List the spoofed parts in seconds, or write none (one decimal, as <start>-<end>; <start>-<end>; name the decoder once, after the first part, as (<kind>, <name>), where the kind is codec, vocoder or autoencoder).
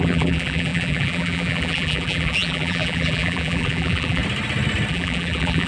0.0-4.2 (vocoder, BigVGAN v2); 4.9-5.7